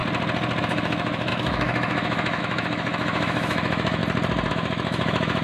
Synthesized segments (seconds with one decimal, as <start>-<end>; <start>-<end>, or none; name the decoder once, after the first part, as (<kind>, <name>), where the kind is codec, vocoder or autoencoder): 0.6-4.0 (autoencoder, DAC-VAE); 4.5-5.4